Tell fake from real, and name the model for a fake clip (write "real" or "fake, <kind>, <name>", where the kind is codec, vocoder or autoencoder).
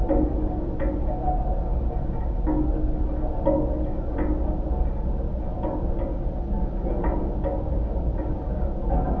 real